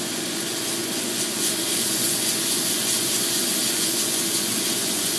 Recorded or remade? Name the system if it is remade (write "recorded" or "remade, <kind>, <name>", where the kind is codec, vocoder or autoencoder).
remade, vocoder, Vocos